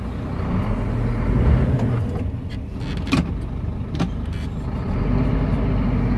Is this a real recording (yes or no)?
yes